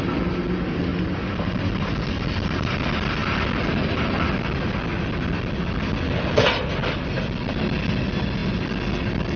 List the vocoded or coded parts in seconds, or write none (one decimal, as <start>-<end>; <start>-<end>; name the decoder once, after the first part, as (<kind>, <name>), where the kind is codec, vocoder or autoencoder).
none